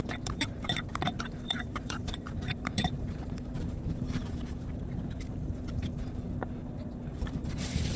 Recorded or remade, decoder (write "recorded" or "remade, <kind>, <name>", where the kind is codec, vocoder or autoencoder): remade, vocoder, BigVGAN v2